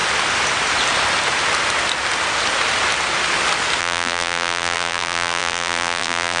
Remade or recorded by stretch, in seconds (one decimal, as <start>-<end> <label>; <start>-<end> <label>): 0.0-3.8 recorded; 3.8-6.4 remade